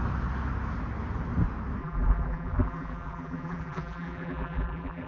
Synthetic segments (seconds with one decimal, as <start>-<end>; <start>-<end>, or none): 1.8-5.1